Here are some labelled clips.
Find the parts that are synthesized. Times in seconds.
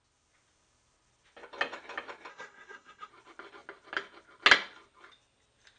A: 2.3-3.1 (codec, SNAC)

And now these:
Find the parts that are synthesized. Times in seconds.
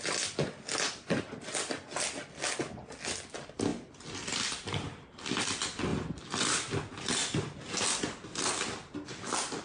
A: none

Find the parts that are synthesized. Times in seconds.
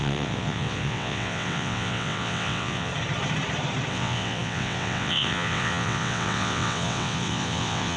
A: 0.0-2.9 (vocoder, WaveNeXt); 3.9-8.0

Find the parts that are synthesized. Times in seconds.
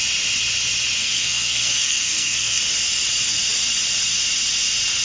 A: 1.0-2.6 (codec, SNAC)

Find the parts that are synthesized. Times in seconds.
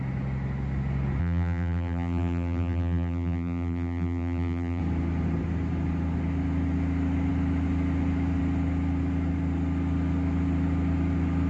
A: 1.2-4.8 (vocoder, BigVGAN v2)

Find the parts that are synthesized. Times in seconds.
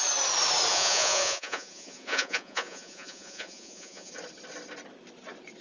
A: 0.7-4.1 (vocoder, Vocos)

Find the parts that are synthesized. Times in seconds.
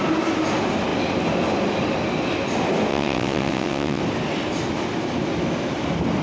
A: 2.9-4.0 (vocoder, WaveNeXt)